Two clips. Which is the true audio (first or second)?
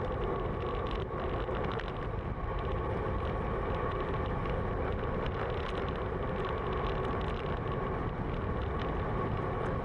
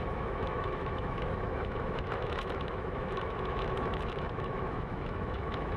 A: first